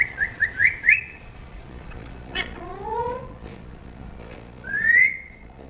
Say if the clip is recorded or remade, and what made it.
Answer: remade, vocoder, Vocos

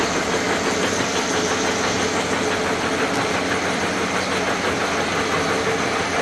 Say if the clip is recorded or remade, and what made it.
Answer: recorded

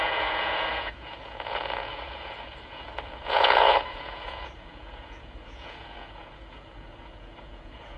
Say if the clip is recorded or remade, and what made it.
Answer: remade, vocoder, Vocos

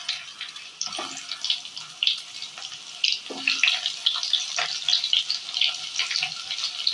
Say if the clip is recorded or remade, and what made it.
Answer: recorded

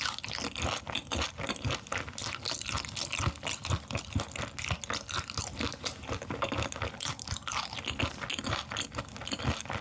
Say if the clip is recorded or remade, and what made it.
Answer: recorded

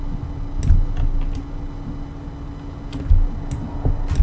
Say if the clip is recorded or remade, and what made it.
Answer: recorded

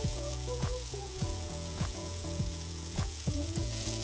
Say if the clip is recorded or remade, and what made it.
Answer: remade, vocoder, Vocos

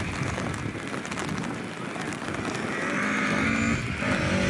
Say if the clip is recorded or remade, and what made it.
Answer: recorded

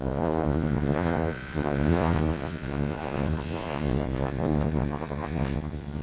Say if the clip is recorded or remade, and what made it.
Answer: remade, vocoder, Vocos